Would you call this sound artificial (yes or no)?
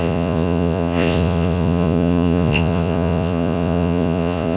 yes